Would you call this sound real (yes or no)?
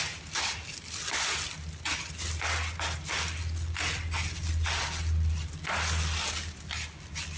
yes